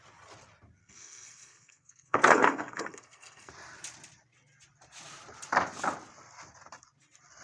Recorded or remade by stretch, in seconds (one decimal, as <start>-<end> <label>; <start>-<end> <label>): 0.0-0.8 recorded; 0.8-3.5 remade; 3.5-7.4 recorded